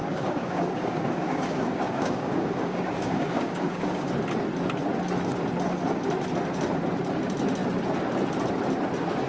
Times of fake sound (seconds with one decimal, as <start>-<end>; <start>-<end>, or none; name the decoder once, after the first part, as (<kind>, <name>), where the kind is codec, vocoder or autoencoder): 0.0-4.1 (codec, DAC)